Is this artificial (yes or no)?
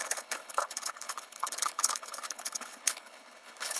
yes